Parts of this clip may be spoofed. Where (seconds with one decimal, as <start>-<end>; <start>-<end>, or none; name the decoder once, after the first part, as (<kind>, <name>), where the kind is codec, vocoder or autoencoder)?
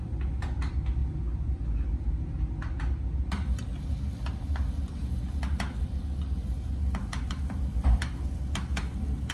none